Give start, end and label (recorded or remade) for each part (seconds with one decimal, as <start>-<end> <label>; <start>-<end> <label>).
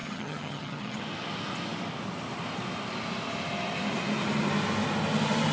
0.0-1.0 remade; 1.0-5.5 recorded